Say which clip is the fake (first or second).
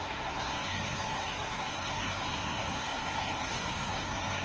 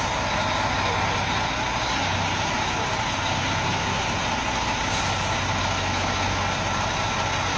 first